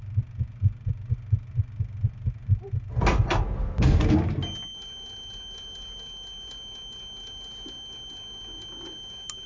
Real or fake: real